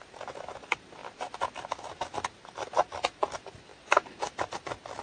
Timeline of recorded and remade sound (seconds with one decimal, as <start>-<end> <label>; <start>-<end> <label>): 0.0-5.0 recorded

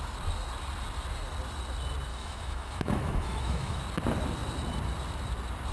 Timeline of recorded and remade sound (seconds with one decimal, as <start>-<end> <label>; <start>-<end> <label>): 0.0-2.1 recorded; 2.1-3.8 remade; 3.8-5.7 recorded

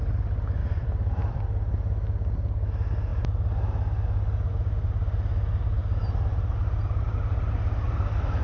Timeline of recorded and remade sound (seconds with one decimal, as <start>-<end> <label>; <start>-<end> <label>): 0.0-0.6 recorded; 0.6-1.4 remade; 1.4-8.4 recorded

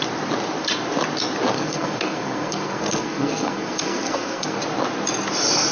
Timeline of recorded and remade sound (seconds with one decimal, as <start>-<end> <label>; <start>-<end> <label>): 0.0-1.5 recorded; 1.5-4.6 remade; 4.6-5.7 recorded

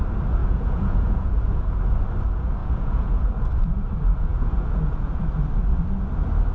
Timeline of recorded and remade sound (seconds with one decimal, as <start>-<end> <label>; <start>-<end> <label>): 0.0-0.4 recorded; 0.4-1.8 remade; 1.8-2.6 recorded; 2.6-3.3 remade; 3.3-4.3 recorded; 4.3-5.2 remade; 5.2-6.5 recorded

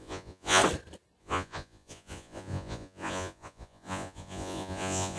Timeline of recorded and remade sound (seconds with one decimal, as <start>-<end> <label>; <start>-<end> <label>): 0.0-0.6 remade; 0.6-1.2 recorded; 1.2-5.2 remade